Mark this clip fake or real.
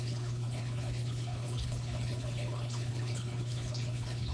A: fake